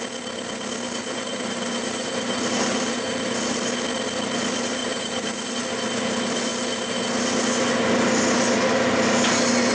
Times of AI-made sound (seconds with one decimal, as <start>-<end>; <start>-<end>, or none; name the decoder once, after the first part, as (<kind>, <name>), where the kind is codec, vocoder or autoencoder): 1.0-3.0 (vocoder, BigVGAN v2); 4.8-5.5